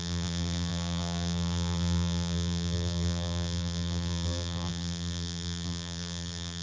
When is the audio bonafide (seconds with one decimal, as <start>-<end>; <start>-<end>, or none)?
none